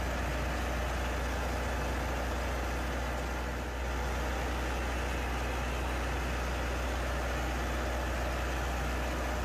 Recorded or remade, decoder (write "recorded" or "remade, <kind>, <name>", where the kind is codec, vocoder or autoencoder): recorded